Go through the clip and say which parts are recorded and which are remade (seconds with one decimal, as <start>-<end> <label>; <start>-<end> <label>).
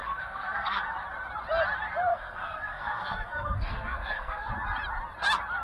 0.0-0.8 remade; 0.8-2.1 recorded; 2.1-4.5 remade; 4.5-5.6 recorded